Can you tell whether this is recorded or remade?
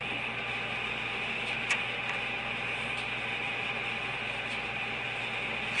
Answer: recorded